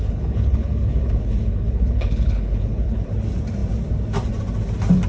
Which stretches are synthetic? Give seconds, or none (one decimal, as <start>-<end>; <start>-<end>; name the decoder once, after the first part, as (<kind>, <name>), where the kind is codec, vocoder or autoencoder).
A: 0.0-3.1 (codec, HILCodec)